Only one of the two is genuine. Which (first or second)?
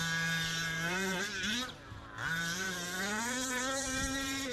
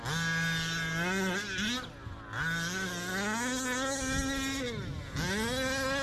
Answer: second